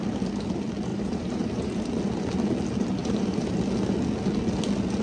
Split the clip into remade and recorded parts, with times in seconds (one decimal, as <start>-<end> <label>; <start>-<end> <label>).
0.0-0.9 recorded; 0.9-1.9 remade; 1.9-3.0 recorded; 3.0-3.5 remade; 3.5-5.0 recorded